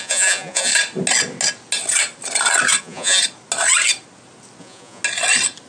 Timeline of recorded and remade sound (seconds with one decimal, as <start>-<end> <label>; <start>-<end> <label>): 0.0-0.7 remade; 0.7-2.8 recorded; 2.8-3.2 remade; 3.2-4.6 recorded; 4.6-5.0 remade; 5.0-5.7 recorded